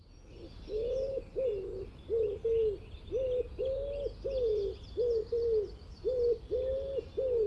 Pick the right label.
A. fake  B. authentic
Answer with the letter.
B